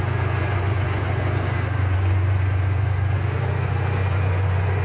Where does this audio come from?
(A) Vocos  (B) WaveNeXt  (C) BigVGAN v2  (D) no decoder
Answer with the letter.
A